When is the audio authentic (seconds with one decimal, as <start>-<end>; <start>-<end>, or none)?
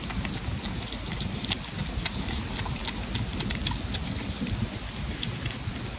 0.0-6.0